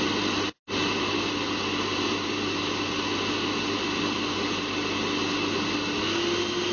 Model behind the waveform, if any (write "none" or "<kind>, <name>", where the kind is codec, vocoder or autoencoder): none